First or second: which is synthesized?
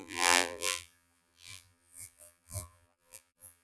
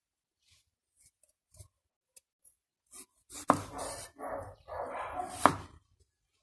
first